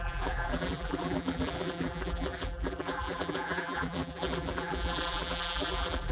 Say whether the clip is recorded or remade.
remade